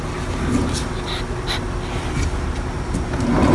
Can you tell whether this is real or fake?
real